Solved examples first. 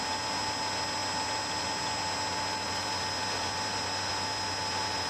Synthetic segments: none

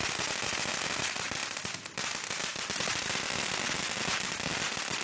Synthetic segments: 1.4-3.0 (vocoder, BigVGAN v2)

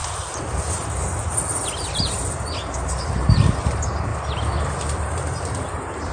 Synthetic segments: 3.2-4.1 (vocoder, BigVGAN v2); 4.6-6.1